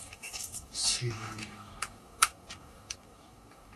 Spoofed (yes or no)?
yes